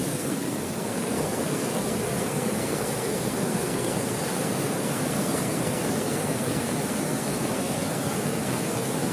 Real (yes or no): no